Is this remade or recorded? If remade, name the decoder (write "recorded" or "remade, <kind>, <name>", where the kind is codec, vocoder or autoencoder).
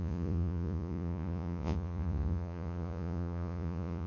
remade, vocoder, Vocos